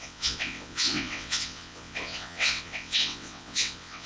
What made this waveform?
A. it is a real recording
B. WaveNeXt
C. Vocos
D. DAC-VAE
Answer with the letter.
B